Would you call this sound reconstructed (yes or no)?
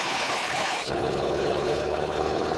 yes